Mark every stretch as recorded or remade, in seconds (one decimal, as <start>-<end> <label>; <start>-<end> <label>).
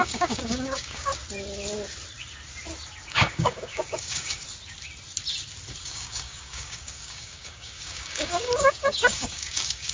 0.0-1.1 remade; 1.1-3.1 recorded; 3.1-4.4 remade; 4.4-5.8 recorded; 5.8-9.9 remade